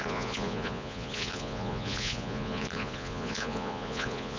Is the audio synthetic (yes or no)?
yes